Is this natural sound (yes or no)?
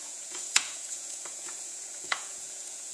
no